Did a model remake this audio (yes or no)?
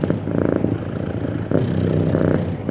no